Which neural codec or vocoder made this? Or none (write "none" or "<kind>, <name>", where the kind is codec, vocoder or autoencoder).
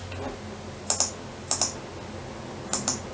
none